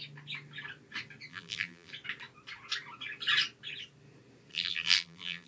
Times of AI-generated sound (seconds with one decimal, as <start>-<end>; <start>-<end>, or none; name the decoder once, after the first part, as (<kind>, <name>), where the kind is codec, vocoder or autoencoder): 1.3-1.9 (vocoder, BigVGAN v2); 4.5-5.5